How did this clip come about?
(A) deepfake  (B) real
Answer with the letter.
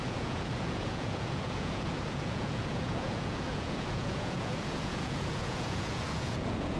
A